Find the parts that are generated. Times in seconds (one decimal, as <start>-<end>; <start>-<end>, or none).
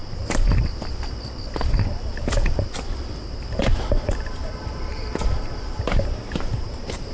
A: 1.6-5.9; 6.6-7.1